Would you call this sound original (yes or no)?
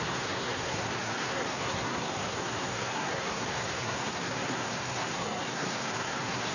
no